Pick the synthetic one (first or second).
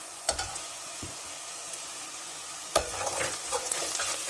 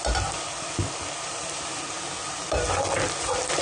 first